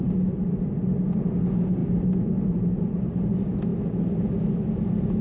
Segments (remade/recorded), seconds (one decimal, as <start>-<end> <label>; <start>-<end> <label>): 0.0-5.2 recorded